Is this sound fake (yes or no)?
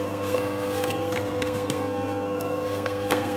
yes